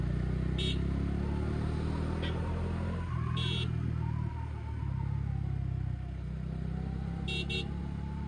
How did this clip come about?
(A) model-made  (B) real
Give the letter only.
B